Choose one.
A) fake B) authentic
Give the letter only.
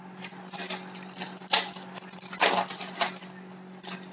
B